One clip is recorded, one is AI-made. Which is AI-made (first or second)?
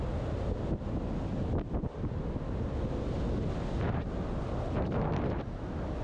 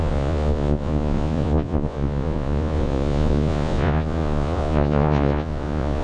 second